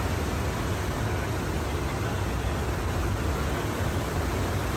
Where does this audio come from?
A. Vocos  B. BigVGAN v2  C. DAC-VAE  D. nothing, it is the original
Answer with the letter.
D